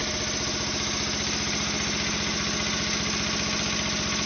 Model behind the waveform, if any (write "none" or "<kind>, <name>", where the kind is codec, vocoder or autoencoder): none